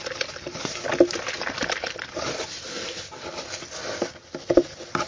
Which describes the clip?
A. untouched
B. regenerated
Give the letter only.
A